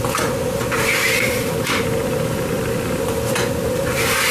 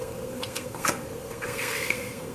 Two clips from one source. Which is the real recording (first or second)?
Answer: first